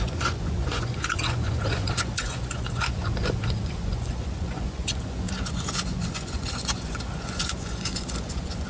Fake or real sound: fake